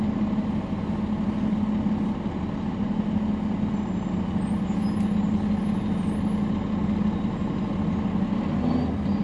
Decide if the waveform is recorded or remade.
recorded